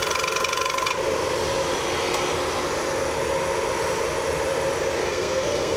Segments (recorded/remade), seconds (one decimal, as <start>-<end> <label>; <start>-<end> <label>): 0.0-5.0 recorded; 5.0-5.8 remade